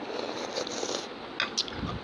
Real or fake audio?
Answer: real